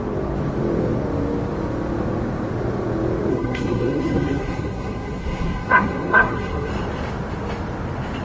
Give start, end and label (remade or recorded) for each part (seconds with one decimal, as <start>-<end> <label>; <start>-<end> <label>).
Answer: 0.0-3.3 recorded; 3.3-6.7 remade; 6.7-8.2 recorded